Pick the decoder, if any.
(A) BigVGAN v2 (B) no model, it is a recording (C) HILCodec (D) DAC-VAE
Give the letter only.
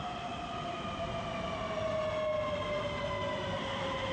B